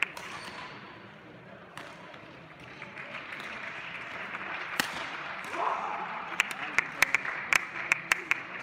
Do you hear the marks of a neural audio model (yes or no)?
yes